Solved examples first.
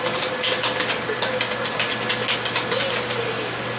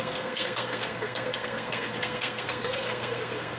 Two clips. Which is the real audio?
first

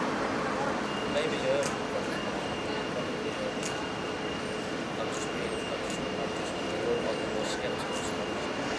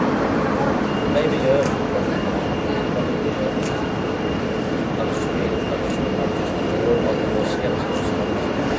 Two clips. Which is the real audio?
first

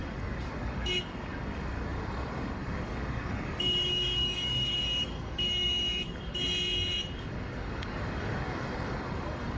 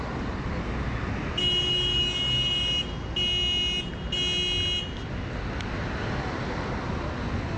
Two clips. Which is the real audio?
second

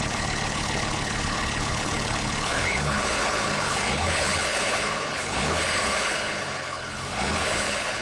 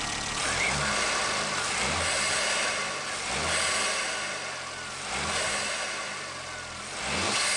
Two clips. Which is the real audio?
second